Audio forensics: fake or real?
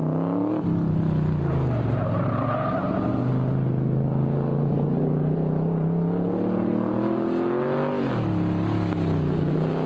real